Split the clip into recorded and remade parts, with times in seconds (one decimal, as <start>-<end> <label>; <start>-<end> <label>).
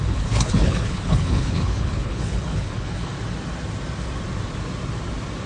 0.0-3.1 remade; 3.1-5.5 recorded